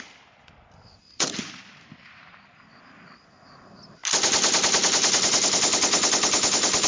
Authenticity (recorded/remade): recorded